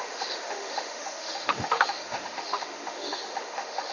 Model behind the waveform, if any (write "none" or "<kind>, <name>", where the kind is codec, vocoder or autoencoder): autoencoder, DAC-VAE